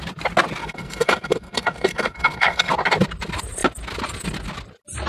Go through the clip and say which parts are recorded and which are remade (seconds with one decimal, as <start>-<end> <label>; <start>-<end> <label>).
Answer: 0.0-0.6 recorded; 0.6-2.7 remade; 2.7-5.1 recorded